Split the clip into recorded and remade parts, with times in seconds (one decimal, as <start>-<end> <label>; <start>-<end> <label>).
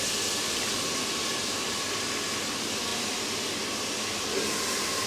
0.0-5.1 recorded